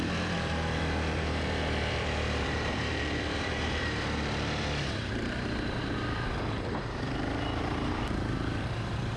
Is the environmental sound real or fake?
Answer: fake